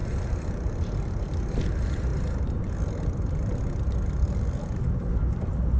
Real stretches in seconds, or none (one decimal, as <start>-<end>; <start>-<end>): 0.0-5.8